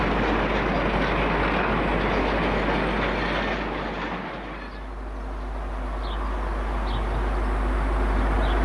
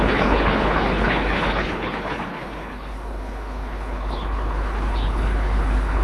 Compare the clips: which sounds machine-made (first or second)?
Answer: second